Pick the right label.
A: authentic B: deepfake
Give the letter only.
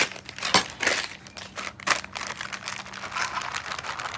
A